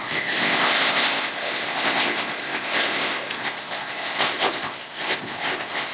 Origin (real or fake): fake